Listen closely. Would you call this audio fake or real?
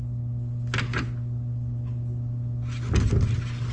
real